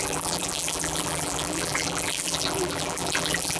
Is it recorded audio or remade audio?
remade